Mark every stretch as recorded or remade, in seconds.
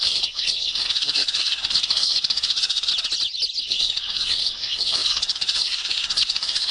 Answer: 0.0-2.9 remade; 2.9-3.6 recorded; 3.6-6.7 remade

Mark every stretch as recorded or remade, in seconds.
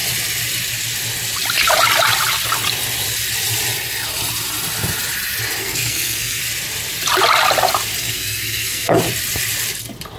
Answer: 0.0-5.6 recorded; 5.6-6.4 remade; 6.4-8.0 recorded; 8.0-9.0 remade; 9.0-10.2 recorded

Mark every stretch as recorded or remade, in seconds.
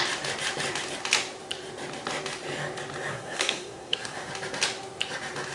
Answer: 0.0-3.1 recorded; 3.1-4.3 remade; 4.3-5.5 recorded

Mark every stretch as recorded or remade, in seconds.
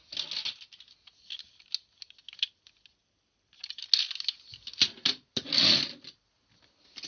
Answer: 0.0-7.1 recorded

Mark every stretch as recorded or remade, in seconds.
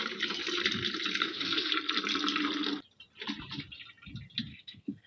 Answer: 0.0-1.2 recorded; 1.2-1.7 remade; 1.7-4.5 recorded; 4.5-5.1 remade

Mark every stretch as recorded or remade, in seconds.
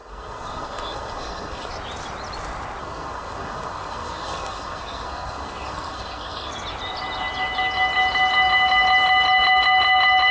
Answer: 0.0-1.7 remade; 1.7-2.8 recorded; 2.8-6.5 remade; 6.5-10.3 recorded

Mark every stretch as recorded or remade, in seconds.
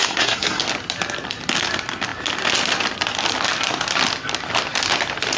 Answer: 0.0-0.6 remade; 0.6-5.4 recorded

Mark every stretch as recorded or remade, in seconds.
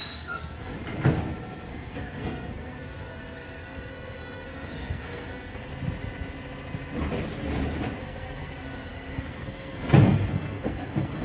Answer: 0.0-0.7 remade; 0.7-1.7 recorded; 1.7-5.7 remade; 5.7-8.0 recorded; 8.0-11.2 remade